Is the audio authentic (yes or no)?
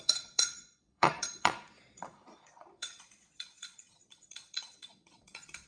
no